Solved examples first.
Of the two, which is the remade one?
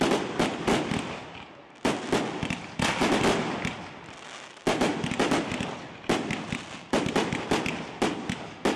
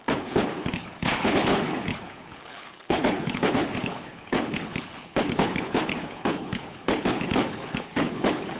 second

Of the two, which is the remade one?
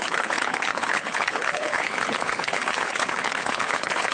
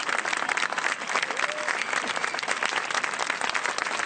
first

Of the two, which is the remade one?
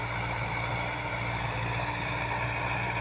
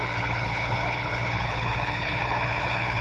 second